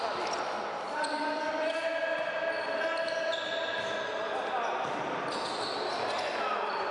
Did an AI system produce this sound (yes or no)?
no